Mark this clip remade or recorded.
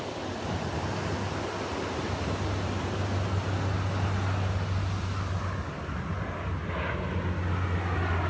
recorded